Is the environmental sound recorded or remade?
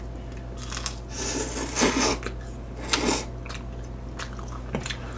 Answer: recorded